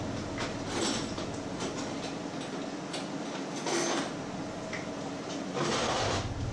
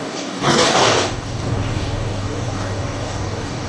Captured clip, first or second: first